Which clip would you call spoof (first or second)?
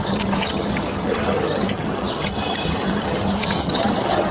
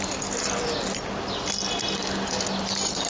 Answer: first